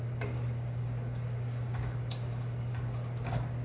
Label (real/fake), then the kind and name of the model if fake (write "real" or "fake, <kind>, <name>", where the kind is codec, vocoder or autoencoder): fake, codec, DAC